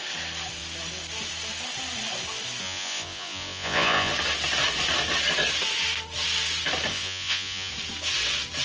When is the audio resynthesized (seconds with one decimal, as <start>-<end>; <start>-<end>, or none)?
2.6-4.1; 6.9-7.7